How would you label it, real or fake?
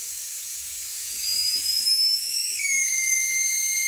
fake